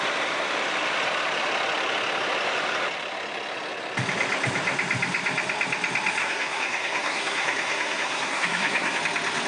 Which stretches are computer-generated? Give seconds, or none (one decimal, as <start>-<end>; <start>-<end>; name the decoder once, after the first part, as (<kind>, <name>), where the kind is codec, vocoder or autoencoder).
6.2-9.0 (codec, SNAC)